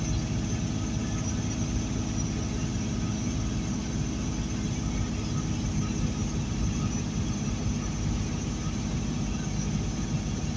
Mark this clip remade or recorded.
recorded